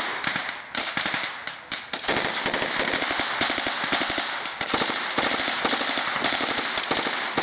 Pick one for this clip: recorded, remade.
recorded